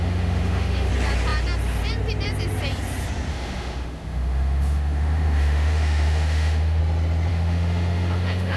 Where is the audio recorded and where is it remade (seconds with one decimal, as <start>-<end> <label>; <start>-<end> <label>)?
0.0-0.9 remade; 0.9-3.3 recorded; 3.3-6.8 remade; 6.8-7.3 recorded; 7.3-8.6 remade